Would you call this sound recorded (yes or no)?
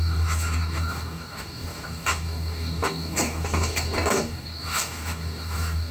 no